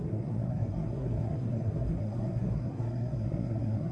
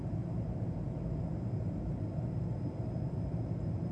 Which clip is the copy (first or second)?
first